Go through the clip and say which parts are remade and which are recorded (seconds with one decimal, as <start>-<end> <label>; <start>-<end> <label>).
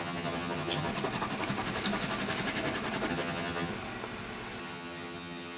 0.0-0.9 remade; 0.9-3.1 recorded; 3.1-3.7 remade; 3.7-4.6 recorded; 4.6-5.6 remade